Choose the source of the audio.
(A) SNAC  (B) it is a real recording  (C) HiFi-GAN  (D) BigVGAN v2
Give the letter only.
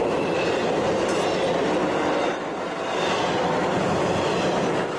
B